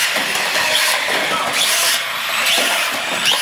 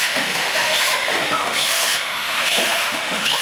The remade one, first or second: second